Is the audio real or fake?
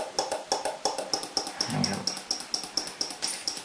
real